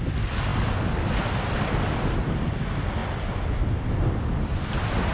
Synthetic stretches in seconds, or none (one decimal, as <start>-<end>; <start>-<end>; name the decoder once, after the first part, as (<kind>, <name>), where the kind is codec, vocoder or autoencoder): none